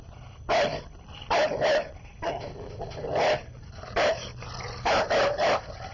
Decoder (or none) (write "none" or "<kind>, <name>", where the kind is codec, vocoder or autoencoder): none